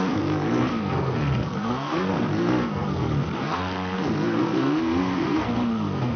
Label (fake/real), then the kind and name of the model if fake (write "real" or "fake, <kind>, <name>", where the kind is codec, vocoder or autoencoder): fake, codec, SNAC